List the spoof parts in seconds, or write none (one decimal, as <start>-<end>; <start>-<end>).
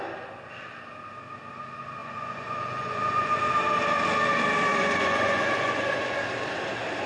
2.0-3.5; 4.7-6.2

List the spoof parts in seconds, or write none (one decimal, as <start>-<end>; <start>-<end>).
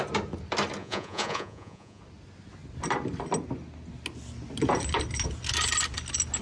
0.8-2.0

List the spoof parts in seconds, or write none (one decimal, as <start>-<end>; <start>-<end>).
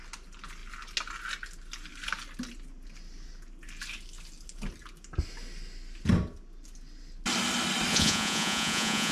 7.9-9.1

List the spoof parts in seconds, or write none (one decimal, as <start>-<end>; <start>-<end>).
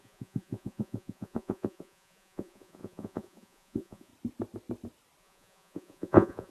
0.0-4.1; 5.2-6.5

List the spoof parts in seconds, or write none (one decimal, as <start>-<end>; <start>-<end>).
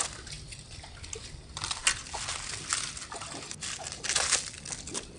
none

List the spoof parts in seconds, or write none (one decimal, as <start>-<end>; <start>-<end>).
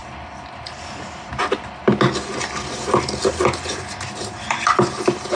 none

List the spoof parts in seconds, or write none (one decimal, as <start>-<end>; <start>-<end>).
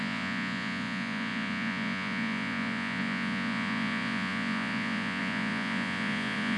0.0-6.6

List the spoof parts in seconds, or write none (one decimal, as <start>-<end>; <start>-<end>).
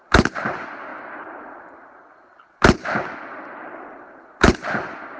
none